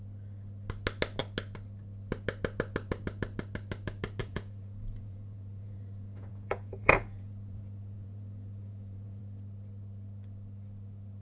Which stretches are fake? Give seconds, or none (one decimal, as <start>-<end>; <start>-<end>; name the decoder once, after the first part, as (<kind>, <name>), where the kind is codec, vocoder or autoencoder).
4.2-9.2 (vocoder, Vocos)